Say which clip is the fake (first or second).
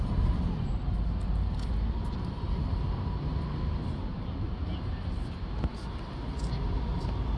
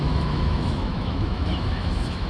second